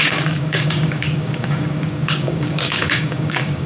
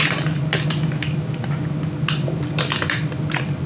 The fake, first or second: first